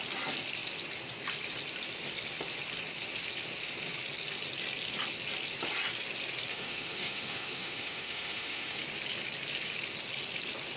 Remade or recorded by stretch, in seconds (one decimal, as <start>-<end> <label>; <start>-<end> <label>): 0.0-6.5 recorded; 6.5-8.8 remade; 8.8-10.8 recorded

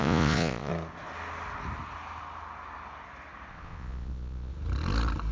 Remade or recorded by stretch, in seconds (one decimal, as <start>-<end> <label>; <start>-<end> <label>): 0.0-0.7 remade; 0.7-3.5 recorded; 3.5-4.5 remade; 4.5-5.3 recorded

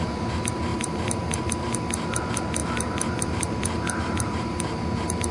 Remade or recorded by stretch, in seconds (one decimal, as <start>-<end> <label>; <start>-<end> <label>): 0.0-0.7 recorded; 0.7-1.4 remade; 1.4-2.6 recorded; 2.6-4.6 remade; 4.6-5.3 recorded

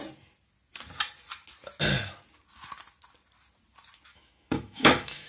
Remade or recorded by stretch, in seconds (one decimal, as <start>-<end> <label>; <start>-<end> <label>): 0.0-4.1 recorded; 4.1-5.3 remade